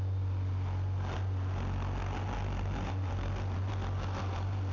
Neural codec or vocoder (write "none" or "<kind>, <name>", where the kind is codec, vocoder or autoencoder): none